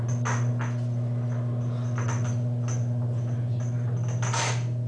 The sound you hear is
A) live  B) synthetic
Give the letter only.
A